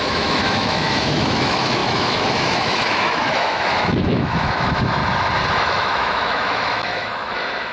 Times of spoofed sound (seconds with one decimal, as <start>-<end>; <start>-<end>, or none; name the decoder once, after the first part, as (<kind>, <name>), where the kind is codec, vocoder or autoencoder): 0.0-5.0 (autoencoder, DAC-VAE); 5.6-7.7